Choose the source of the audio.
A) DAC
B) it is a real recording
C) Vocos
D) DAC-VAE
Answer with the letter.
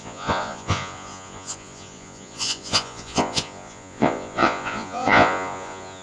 C